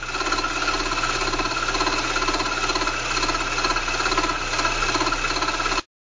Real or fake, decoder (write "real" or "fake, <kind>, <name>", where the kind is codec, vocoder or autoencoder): real